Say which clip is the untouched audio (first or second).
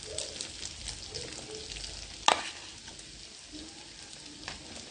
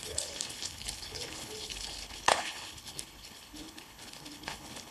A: first